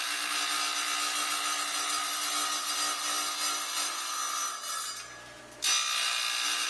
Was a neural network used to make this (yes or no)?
no